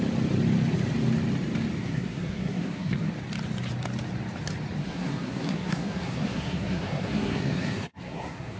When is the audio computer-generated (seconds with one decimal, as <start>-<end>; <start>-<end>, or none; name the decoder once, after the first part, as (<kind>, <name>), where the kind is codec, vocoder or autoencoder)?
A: 1.8-3.1 (codec, SNAC); 4.8-8.6